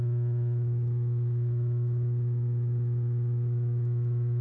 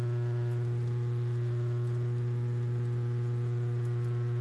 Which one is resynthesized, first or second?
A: first